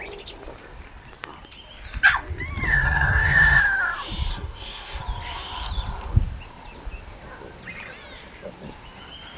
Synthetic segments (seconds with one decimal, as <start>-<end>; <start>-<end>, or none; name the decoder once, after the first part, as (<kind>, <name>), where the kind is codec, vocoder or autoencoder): 2.7-3.6 (codec, SNAC); 4.3-5.0